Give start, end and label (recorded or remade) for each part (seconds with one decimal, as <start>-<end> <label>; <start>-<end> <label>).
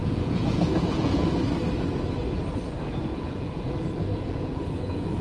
0.0-1.3 remade; 1.3-3.1 recorded; 3.1-5.2 remade